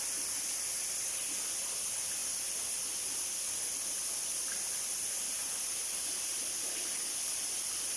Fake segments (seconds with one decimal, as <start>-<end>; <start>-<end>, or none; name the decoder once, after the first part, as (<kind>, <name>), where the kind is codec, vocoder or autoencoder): none